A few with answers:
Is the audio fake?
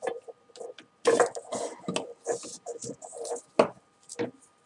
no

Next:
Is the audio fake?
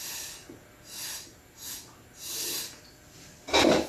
no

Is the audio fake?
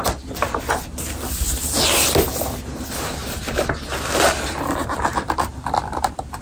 no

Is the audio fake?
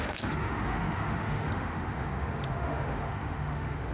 yes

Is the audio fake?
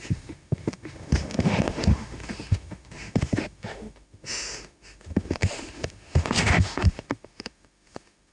yes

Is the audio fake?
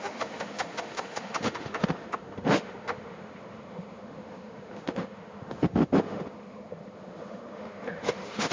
yes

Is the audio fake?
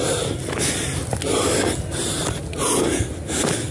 no